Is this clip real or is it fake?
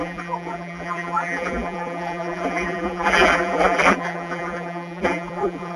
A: fake